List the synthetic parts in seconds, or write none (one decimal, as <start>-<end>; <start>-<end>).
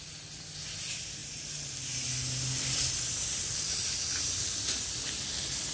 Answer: none